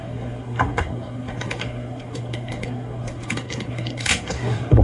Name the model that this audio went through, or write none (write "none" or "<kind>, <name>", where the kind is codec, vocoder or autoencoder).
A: codec, SNAC